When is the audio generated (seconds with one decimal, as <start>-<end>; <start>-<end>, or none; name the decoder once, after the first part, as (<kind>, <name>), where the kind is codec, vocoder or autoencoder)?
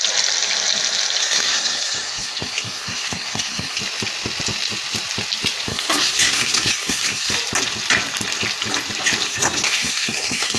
1.2-3.8 (codec, SNAC); 5.7-7.3; 9.3-10.6